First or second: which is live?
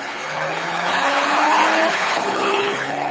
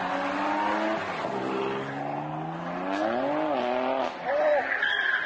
second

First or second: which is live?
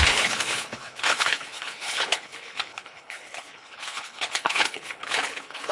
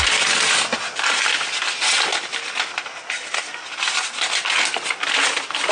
second